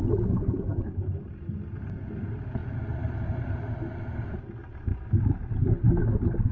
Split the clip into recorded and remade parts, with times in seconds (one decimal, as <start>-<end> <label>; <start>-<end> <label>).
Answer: 0.0-6.5 recorded